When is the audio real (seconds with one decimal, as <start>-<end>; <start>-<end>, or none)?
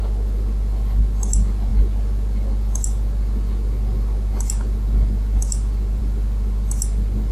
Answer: 0.0-7.3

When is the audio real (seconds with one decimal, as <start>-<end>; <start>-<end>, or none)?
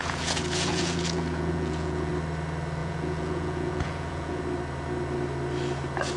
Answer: 2.1-2.8; 4.4-6.2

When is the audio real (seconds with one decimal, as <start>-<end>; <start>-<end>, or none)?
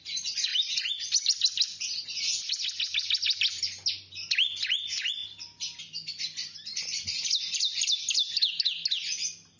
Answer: 0.0-9.6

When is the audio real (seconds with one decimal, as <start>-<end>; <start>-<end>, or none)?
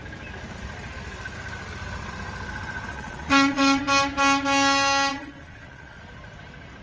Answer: 0.0-2.9; 3.8-5.1; 6.0-6.8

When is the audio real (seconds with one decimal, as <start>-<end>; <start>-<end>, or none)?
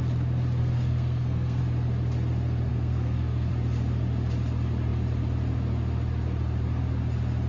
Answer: 0.0-0.6; 1.6-2.7; 3.5-7.5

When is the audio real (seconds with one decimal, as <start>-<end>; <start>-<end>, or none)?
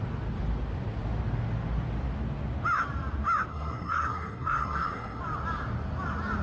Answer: 0.0-3.5; 5.2-6.4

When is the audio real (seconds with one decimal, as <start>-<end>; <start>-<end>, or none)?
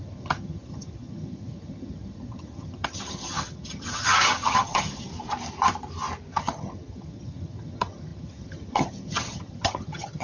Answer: 5.1-6.3